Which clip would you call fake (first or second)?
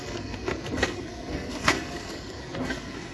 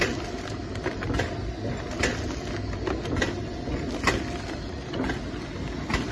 first